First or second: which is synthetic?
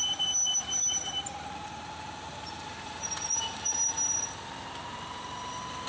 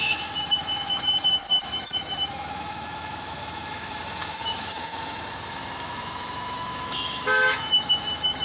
second